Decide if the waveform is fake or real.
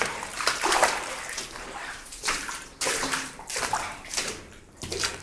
fake